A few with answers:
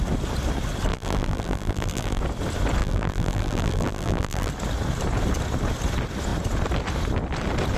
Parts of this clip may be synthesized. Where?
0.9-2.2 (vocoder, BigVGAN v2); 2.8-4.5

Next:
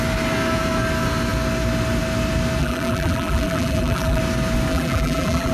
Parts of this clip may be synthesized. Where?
2.6-4.2 (vocoder, BigVGAN v2); 4.7-5.5

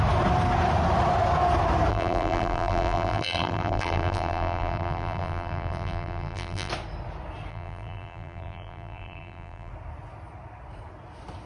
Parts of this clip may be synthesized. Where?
1.9-6.7 (vocoder, BigVGAN v2); 7.5-9.7

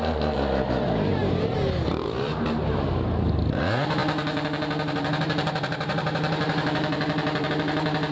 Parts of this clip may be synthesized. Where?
0.0-8.1 (vocoder, BigVGAN v2)

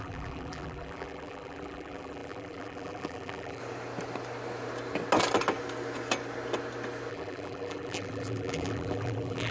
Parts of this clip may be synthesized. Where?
0.0-3.6 (vocoder, BigVGAN v2); 7.1-9.5

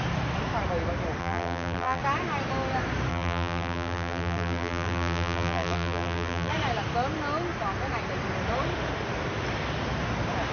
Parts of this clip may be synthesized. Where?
1.2-2.0 (vocoder, BigVGAN v2); 3.1-6.5